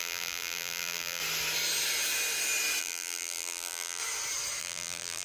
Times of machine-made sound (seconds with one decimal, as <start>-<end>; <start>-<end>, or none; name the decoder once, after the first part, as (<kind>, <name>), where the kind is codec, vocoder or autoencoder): 0.0-1.2 (vocoder, BigVGAN v2); 2.8-4.0; 4.6-5.2